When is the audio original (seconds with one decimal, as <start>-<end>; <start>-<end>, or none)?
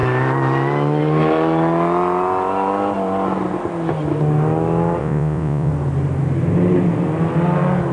0.0-5.0; 5.7-7.9